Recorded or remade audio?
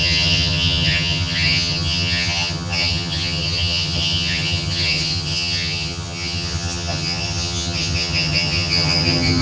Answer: remade